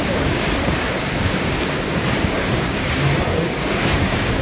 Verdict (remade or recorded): remade